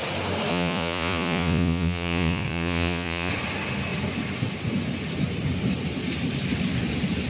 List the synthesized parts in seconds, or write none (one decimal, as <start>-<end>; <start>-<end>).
0.5-3.3